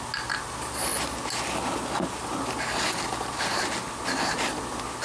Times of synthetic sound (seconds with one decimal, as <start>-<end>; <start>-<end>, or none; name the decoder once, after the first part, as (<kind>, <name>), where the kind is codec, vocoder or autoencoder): none